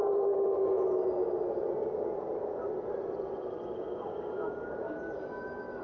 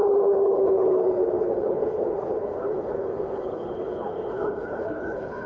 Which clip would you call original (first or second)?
first